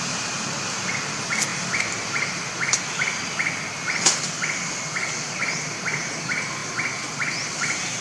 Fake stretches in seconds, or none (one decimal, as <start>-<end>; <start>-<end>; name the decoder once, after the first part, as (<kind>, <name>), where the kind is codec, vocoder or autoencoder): none